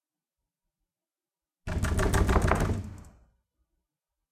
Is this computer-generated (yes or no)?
no